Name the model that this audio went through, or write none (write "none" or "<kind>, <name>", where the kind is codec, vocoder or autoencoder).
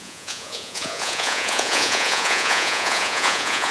vocoder, Vocos